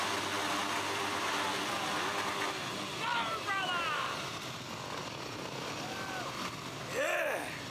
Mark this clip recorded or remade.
recorded